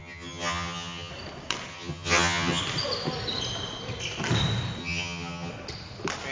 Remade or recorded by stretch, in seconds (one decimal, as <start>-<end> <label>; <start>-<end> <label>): 0.0-1.1 remade; 1.1-1.7 recorded; 1.7-2.6 remade; 2.6-4.8 recorded; 4.8-5.5 remade; 5.5-6.3 recorded

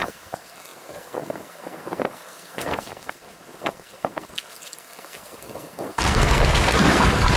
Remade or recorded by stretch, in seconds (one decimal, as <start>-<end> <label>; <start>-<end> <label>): 0.0-7.4 remade

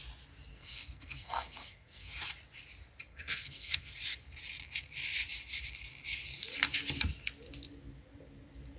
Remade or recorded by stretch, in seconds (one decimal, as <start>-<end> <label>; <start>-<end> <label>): 0.0-0.5 recorded; 0.5-2.1 remade; 2.1-3.1 recorded; 3.1-3.9 remade; 3.9-8.8 recorded